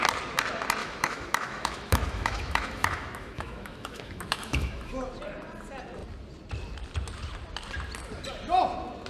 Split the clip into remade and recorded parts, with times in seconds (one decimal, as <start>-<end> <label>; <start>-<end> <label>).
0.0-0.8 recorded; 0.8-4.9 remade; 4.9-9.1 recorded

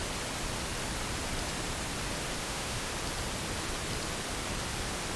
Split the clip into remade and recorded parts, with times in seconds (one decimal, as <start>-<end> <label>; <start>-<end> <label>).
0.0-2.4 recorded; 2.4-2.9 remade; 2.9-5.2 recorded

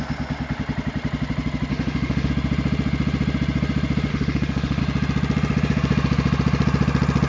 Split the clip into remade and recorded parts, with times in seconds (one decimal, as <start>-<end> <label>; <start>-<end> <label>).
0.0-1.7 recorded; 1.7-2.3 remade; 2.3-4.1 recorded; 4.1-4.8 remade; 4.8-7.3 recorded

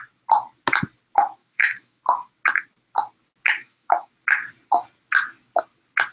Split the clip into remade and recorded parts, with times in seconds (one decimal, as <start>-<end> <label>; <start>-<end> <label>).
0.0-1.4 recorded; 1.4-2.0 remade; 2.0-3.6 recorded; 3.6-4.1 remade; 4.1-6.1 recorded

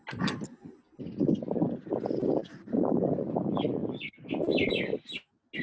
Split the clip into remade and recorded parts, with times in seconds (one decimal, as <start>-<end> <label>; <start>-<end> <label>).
0.0-5.6 recorded

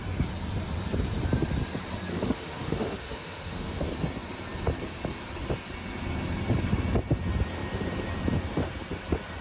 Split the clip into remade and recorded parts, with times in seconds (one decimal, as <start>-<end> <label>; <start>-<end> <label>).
0.0-2.1 recorded; 2.1-3.8 remade; 3.8-9.4 recorded

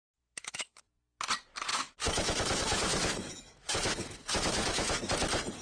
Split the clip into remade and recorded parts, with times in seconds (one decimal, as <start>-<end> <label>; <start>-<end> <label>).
0.0-0.8 remade; 0.8-1.7 recorded; 1.7-5.1 remade; 5.1-5.6 recorded